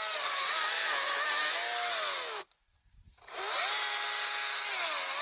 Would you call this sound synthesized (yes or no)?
no